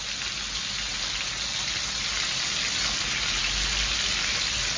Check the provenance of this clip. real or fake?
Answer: real